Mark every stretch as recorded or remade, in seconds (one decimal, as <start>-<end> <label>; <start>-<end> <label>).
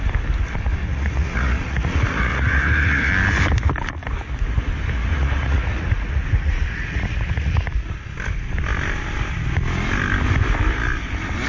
0.0-0.8 recorded; 0.8-3.1 remade; 3.1-5.1 recorded; 5.1-7.5 remade; 7.5-11.5 recorded